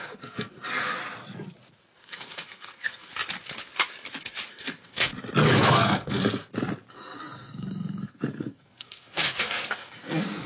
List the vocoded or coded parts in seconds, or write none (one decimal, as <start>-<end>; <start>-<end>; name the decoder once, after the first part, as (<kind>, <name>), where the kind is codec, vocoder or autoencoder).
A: 0.0-1.0 (codec, SNAC); 2.0-3.1; 4.5-5.1; 5.6-6.2; 6.9-10.5